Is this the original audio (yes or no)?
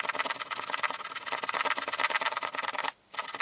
yes